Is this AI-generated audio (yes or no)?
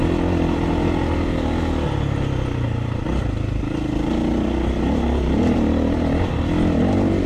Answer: no